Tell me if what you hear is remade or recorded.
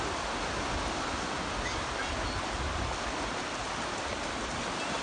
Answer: recorded